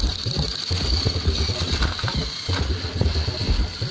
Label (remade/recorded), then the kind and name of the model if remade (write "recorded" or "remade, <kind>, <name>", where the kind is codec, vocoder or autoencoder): recorded